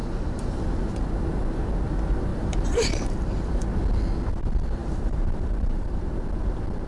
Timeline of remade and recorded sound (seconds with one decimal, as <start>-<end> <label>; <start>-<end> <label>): 0.0-0.5 remade; 0.5-2.3 recorded; 2.3-3.5 remade; 3.5-4.8 recorded; 4.8-6.0 remade; 6.0-6.9 recorded